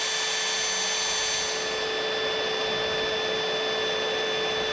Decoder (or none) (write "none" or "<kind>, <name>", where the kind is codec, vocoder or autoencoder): none